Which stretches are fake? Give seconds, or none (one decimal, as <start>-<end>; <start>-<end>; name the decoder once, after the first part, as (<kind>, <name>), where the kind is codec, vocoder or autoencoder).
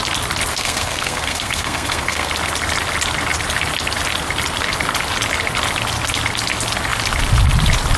0.5-2.3 (codec, SNAC)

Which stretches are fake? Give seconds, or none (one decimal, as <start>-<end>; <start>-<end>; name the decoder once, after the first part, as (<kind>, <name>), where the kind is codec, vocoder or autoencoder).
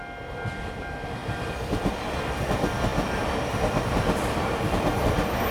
none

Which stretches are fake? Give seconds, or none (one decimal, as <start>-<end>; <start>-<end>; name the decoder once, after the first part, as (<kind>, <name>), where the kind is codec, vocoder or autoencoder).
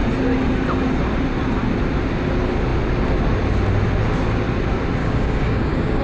5.0-6.0 (codec, DAC)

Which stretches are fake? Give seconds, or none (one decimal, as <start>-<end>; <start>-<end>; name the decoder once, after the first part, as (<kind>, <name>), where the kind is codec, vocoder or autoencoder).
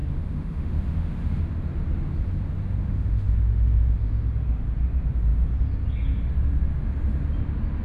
0.0-1.4 (autoencoder, DAC-VAE); 2.8-4.3